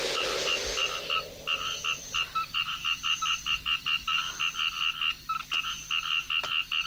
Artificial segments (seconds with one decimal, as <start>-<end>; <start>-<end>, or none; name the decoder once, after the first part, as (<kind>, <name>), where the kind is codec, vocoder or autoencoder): 0.8-4.4 (vocoder, BigVGAN v2)